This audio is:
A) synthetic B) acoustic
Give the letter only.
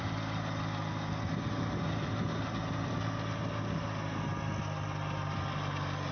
B